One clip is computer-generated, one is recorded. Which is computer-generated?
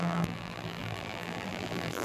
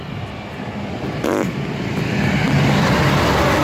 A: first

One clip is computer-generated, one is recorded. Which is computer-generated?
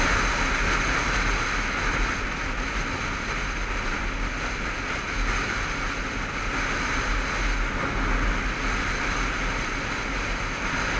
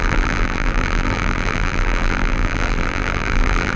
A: second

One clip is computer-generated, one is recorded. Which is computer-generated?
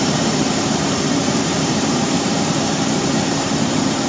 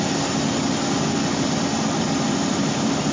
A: first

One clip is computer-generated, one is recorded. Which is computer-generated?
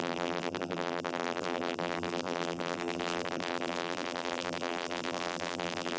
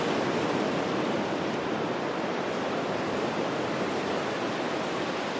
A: first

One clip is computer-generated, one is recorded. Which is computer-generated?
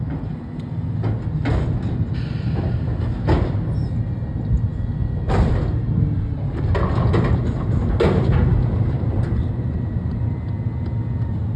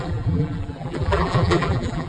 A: second